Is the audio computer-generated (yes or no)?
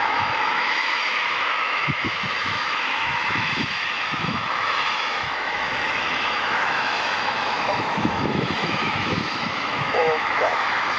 yes